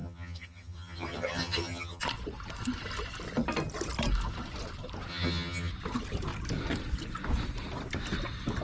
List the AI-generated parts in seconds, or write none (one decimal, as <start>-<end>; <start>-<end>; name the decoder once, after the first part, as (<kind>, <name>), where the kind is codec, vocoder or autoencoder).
0.0-2.0 (vocoder, HiFi-GAN); 5.1-5.7